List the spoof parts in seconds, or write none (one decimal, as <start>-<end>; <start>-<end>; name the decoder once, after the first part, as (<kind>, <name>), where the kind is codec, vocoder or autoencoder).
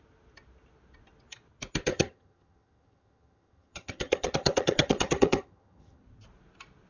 1.9-6.0 (vocoder, HiFi-GAN)